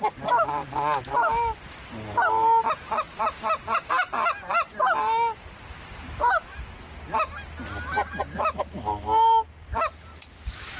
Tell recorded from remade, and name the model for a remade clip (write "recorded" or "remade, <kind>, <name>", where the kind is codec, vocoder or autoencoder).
recorded